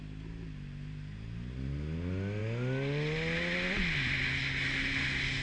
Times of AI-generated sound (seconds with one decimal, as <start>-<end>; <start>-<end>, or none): none